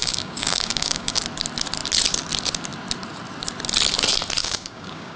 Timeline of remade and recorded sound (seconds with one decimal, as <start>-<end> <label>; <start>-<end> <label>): 0.0-1.2 remade; 1.2-4.4 recorded; 4.4-5.2 remade